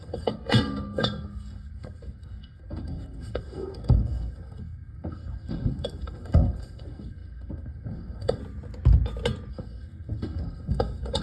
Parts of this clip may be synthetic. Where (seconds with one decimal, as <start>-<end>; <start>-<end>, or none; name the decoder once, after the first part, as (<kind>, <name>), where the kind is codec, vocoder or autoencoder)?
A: 0.0-8.4 (codec, SNAC); 9.5-11.2